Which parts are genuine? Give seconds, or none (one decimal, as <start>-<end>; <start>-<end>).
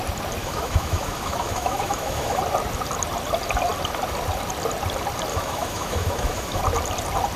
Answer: 0.0-0.4; 2.4-5.3; 6.6-7.4